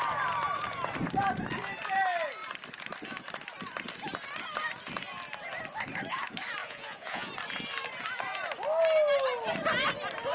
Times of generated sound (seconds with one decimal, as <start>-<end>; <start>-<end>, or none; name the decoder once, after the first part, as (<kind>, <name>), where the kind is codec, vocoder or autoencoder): 6.6-7.3 (vocoder, Vocos)